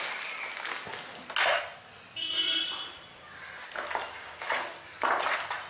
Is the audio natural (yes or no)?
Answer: yes